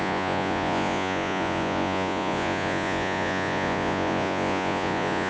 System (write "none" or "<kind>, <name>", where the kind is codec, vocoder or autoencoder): vocoder, Vocos